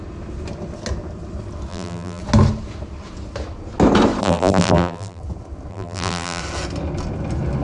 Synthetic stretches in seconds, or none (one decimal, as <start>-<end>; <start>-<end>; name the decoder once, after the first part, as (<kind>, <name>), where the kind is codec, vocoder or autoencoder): 1.7-2.2 (vocoder, BigVGAN v2); 4.2-5.2; 5.7-6.4